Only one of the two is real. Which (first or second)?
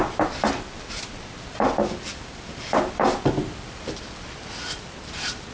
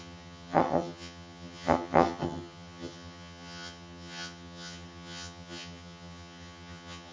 first